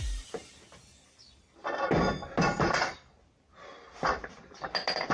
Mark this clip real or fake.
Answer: real